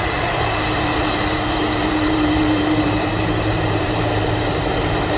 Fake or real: fake